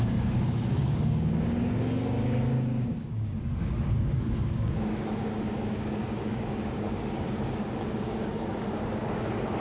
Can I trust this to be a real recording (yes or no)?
no